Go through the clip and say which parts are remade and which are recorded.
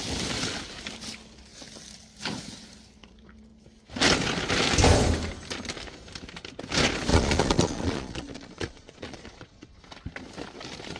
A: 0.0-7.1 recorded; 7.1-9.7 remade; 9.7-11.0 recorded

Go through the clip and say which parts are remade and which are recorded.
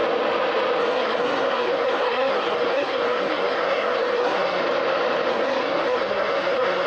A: 0.0-0.8 recorded; 0.8-4.6 remade; 4.6-5.3 recorded; 5.3-6.9 remade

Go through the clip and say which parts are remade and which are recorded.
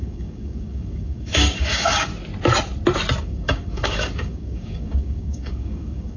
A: 0.0-2.1 remade; 2.1-3.2 recorded; 3.2-6.2 remade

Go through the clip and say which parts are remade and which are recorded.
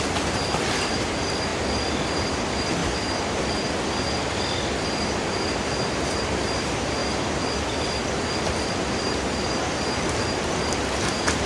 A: 0.0-1.5 remade; 1.5-2.2 recorded; 2.2-2.8 remade; 2.8-5.6 recorded; 5.6-11.5 remade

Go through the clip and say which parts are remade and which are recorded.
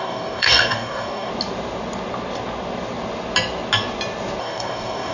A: 0.0-1.3 remade; 1.3-4.4 recorded; 4.4-5.1 remade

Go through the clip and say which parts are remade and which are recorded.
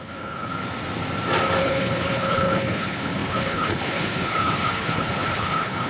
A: 0.0-0.5 remade; 0.5-1.6 recorded; 1.6-5.9 remade